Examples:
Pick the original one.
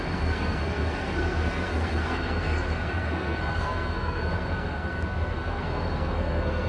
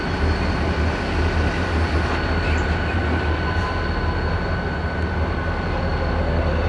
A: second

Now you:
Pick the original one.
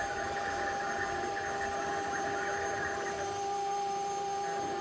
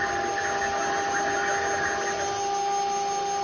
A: second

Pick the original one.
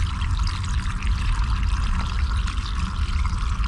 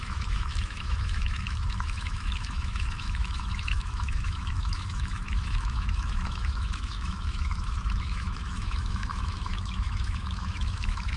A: first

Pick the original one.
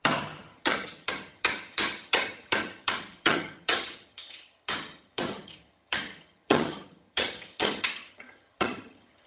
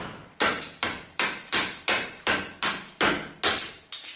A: second